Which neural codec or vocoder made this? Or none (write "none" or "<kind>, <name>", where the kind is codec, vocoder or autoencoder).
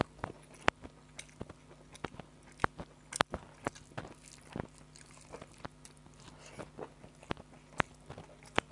none